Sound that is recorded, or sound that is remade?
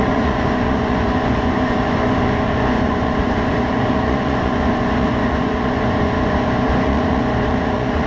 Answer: remade